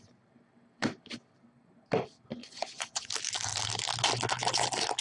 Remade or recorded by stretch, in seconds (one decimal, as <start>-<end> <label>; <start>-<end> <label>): 0.0-2.4 recorded; 2.4-3.1 remade; 3.1-5.0 recorded